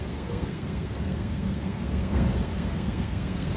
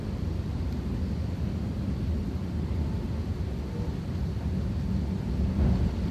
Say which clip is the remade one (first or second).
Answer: first